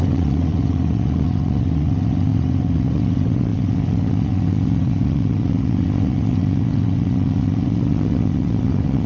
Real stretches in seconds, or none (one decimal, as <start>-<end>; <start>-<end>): none